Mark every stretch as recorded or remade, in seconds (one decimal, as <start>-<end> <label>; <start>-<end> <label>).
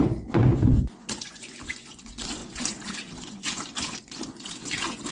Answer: 0.0-5.1 remade